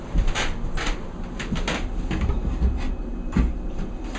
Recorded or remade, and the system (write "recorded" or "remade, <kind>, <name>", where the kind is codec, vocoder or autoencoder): recorded